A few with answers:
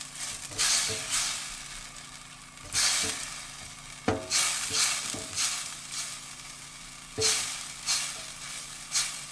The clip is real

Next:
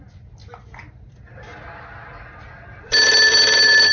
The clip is real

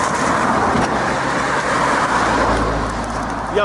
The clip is real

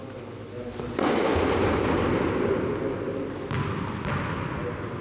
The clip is real